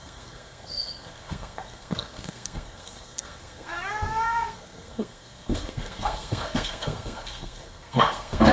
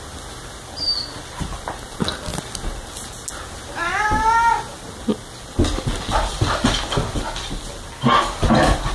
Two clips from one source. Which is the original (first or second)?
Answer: second